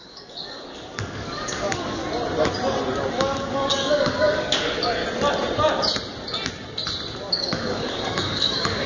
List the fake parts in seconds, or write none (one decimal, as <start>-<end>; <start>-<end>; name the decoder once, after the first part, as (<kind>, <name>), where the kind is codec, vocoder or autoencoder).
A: 0.0-2.0 (codec, DAC); 3.1-5.0; 7.3-8.9